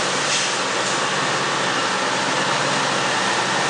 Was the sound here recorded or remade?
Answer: recorded